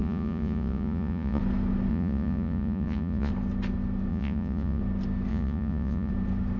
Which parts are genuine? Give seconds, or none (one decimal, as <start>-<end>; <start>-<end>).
1.4-1.9; 3.3-4.1; 4.8-5.3; 6.1-6.6